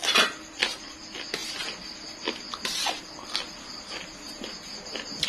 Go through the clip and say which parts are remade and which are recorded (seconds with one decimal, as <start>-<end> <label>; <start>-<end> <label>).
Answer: 0.0-5.3 recorded